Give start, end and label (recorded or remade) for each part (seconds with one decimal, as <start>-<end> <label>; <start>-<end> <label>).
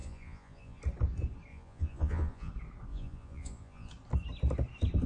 0.0-0.8 remade; 0.8-1.5 recorded; 1.5-2.5 remade; 2.5-2.9 recorded; 2.9-3.9 remade; 3.9-5.1 recorded